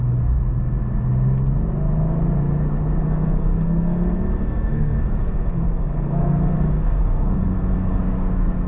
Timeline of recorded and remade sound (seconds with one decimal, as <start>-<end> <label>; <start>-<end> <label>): 0.0-3.0 recorded; 3.0-8.0 remade; 8.0-8.7 recorded